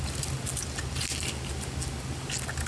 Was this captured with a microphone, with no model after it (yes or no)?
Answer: yes